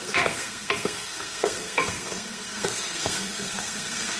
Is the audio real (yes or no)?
no